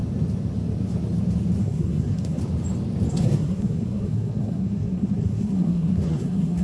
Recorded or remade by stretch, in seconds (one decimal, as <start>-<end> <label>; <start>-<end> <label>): 0.0-1.6 recorded; 1.6-2.4 remade; 2.4-3.1 recorded; 3.1-6.6 remade